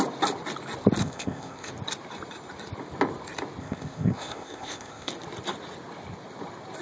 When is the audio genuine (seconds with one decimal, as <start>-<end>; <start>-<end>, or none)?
0.0-1.0; 1.7-3.6; 5.1-6.8